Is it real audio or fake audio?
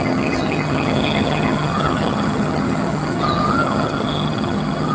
fake